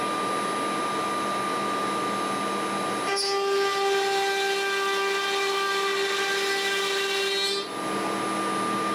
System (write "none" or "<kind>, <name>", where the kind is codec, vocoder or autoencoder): none